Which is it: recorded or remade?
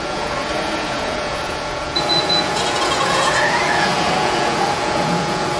remade